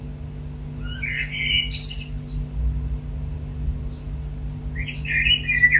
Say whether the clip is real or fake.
real